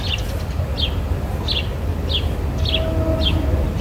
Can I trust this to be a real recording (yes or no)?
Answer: yes